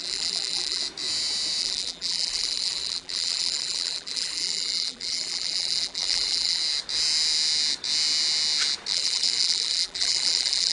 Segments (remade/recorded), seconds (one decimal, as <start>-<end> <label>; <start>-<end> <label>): 0.0-0.8 remade; 0.8-1.6 recorded; 1.6-6.6 remade; 6.6-8.9 recorded; 8.9-10.7 remade

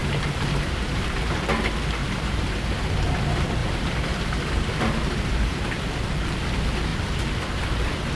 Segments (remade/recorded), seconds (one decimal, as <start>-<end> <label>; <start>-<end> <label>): 0.0-1.4 remade; 1.4-2.0 recorded; 2.0-2.6 remade; 2.6-3.6 recorded; 3.6-5.8 remade; 5.8-8.1 recorded

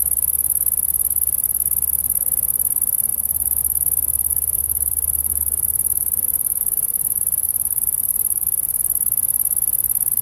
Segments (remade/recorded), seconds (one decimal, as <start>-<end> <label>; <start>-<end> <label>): 0.0-3.1 recorded; 3.1-3.6 remade; 3.6-4.3 recorded; 4.3-8.8 remade; 8.8-10.2 recorded

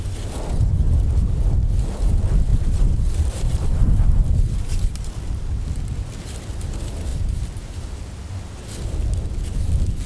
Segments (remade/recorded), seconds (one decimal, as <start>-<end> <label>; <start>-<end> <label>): 0.0-2.5 recorded; 2.5-5.5 remade; 5.5-7.1 recorded; 7.1-8.3 remade; 8.3-10.1 recorded

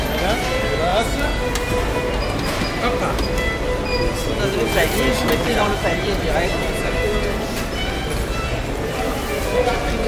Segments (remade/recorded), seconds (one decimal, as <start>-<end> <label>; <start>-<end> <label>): 0.0-5.5 recorded; 5.5-9.7 remade; 9.7-10.1 recorded